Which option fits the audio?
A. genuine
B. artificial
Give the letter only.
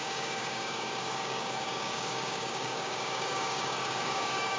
B